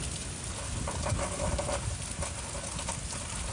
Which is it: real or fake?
real